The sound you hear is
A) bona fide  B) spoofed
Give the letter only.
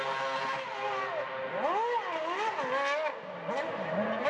A